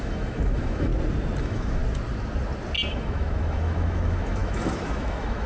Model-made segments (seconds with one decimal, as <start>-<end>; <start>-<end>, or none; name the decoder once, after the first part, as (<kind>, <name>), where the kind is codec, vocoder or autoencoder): 0.0-0.9 (autoencoder, DAC-VAE); 1.4-1.8; 2.9-5.5